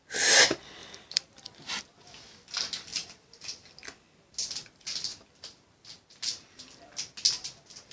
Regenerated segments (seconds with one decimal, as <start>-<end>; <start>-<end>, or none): 0.8-1.7; 2.9-3.7